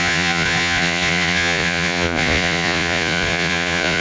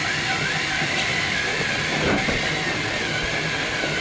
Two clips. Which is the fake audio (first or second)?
first